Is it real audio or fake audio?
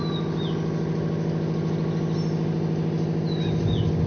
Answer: real